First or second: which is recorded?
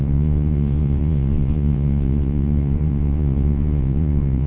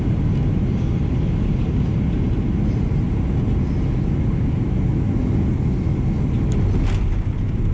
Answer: second